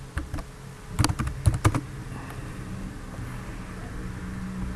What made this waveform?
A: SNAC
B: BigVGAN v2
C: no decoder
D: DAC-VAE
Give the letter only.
C